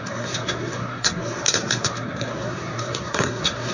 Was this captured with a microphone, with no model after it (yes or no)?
no